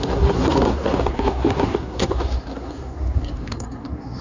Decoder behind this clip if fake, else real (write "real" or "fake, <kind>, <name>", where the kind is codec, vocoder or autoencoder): fake, codec, SNAC